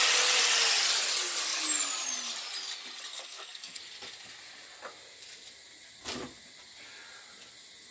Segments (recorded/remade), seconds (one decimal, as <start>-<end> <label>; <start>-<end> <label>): 0.0-3.1 recorded; 3.1-3.8 remade; 3.8-7.9 recorded